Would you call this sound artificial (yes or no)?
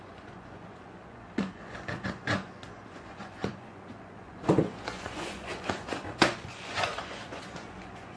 yes